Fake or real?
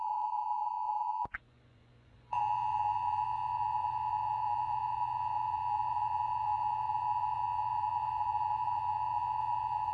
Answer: fake